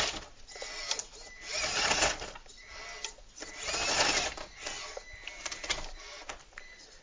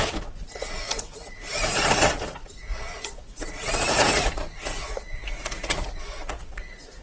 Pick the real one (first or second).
first